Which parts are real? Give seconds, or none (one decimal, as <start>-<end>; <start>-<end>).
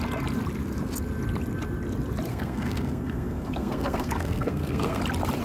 0.0-2.3; 5.0-5.4